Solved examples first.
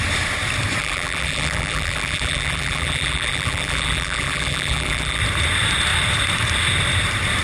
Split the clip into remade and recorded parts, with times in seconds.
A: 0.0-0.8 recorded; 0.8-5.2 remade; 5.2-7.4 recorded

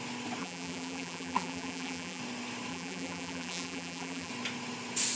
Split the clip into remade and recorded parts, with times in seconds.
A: 0.0-0.4 recorded; 0.4-2.2 remade; 2.2-2.7 recorded; 2.7-4.3 remade; 4.3-5.2 recorded

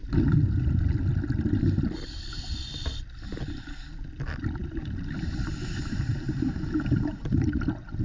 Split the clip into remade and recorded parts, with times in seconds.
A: 0.0-4.6 recorded; 4.6-7.2 remade; 7.2-8.0 recorded

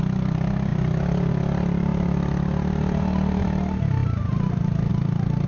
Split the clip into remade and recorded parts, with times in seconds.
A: 0.0-5.5 recorded